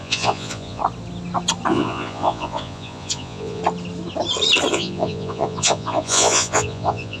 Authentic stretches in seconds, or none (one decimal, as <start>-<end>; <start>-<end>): 0.8-1.7; 3.6-4.7